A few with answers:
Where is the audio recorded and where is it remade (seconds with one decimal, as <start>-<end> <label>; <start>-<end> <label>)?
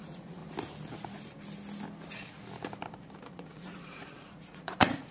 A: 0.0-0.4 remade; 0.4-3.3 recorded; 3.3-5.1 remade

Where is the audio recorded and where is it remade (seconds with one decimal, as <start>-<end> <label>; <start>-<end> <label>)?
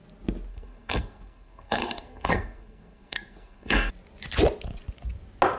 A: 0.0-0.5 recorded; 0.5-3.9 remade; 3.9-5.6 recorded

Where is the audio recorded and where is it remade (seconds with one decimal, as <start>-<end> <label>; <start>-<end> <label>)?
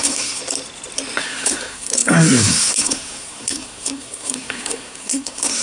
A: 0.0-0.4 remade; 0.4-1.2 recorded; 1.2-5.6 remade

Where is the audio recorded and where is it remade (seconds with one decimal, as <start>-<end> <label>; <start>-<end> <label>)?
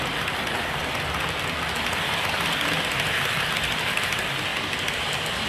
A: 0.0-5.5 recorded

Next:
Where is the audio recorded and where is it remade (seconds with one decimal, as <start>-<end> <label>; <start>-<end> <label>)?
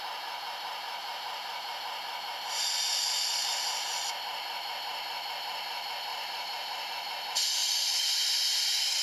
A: 0.0-1.0 recorded; 1.0-1.8 remade; 1.8-6.1 recorded; 6.1-6.9 remade; 6.9-9.0 recorded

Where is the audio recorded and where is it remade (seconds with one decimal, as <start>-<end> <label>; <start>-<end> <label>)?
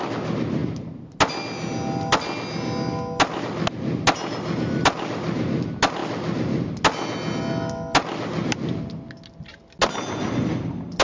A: 0.0-11.0 recorded